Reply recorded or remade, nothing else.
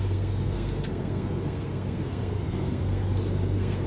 remade